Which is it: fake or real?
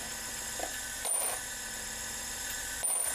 real